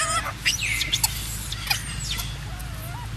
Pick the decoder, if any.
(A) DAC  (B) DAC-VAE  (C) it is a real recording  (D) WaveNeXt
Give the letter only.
C